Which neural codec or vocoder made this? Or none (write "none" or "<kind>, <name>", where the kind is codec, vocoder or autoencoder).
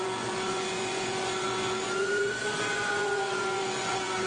vocoder, Vocos